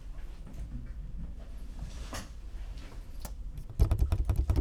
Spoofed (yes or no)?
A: no